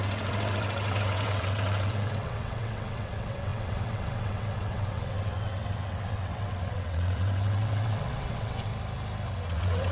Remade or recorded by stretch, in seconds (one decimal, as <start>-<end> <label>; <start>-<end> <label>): 0.0-8.7 remade; 8.7-9.5 recorded; 9.5-9.9 remade